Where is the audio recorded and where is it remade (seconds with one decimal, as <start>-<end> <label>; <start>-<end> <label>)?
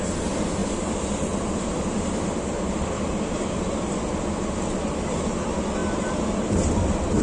0.0-7.2 recorded